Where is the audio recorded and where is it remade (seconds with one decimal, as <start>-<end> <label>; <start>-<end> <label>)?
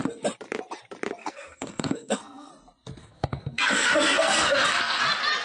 0.0-1.2 recorded; 1.2-2.5 remade; 2.5-3.0 recorded; 3.0-5.0 remade; 5.0-5.4 recorded